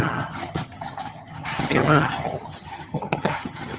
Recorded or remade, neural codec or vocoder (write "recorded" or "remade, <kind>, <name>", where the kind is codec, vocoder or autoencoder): remade, vocoder, HiFi-GAN